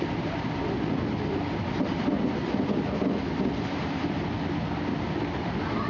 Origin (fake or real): real